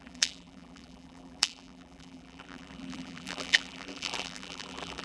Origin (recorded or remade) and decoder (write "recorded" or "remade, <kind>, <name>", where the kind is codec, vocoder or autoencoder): remade, vocoder, BigVGAN v2